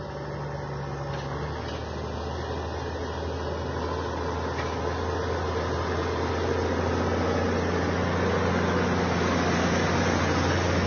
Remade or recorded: recorded